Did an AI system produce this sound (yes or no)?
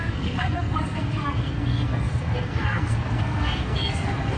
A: yes